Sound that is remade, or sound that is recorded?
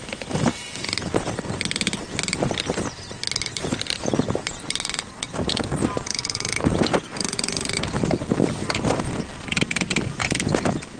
recorded